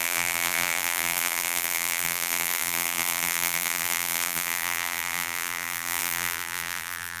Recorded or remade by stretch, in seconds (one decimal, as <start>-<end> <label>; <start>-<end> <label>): 0.0-7.2 remade